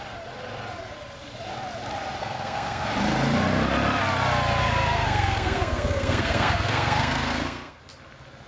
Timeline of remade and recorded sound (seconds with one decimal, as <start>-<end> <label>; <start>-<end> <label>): 0.0-2.2 recorded; 2.2-2.9 remade; 2.9-4.6 recorded; 4.6-7.8 remade; 7.8-8.5 recorded